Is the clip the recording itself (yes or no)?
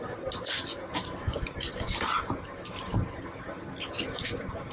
yes